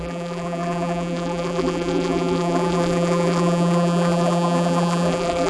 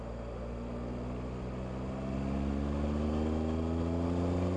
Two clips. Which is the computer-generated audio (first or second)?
first